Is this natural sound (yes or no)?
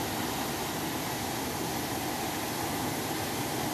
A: yes